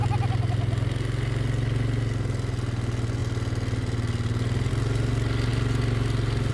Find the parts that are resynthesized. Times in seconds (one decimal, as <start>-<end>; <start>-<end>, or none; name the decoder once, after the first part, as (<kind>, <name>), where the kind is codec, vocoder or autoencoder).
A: none